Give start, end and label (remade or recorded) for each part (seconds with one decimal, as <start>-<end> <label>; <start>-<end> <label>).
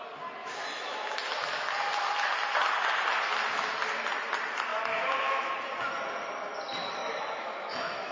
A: 0.0-0.4 recorded; 0.4-1.1 remade; 1.1-4.7 recorded; 4.7-5.5 remade; 5.5-7.0 recorded; 7.0-8.1 remade